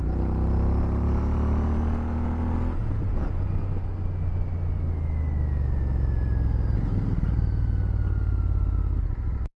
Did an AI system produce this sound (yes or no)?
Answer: no